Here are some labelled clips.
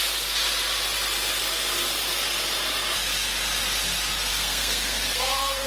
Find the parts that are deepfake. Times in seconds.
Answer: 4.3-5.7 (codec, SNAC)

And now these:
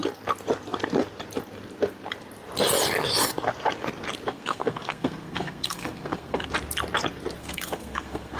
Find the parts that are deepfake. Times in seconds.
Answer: 4.3-6.5 (codec, SNAC); 7.4-8.4

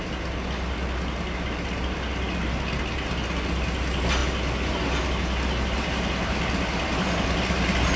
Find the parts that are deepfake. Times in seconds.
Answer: none

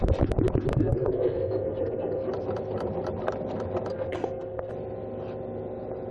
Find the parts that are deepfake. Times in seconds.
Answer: 0.7-2.3 (codec, SNAC); 3.9-4.7